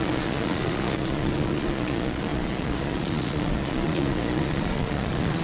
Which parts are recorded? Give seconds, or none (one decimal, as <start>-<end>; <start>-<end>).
none

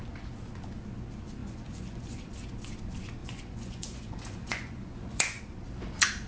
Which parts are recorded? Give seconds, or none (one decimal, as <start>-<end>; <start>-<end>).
0.0-1.4; 2.3-3.2; 5.4-6.3

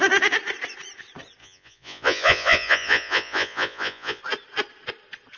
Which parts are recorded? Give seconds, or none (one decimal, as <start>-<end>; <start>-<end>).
0.0-1.4; 4.2-5.4